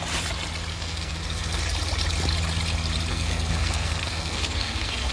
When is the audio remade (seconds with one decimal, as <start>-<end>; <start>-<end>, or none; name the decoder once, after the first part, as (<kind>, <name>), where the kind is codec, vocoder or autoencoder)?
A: 0.7-1.6 (codec, SNAC); 3.1-5.1